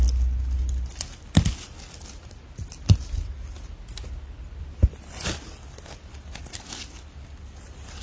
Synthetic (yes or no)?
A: no